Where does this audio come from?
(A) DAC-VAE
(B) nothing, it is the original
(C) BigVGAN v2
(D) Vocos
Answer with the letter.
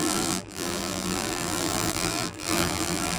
C